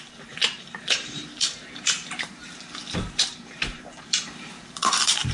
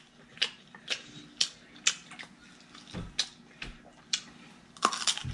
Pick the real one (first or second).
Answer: second